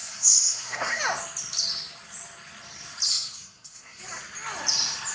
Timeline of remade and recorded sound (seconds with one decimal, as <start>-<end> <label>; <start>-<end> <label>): 0.0-1.0 remade; 1.0-3.1 recorded; 3.1-4.0 remade; 4.0-5.1 recorded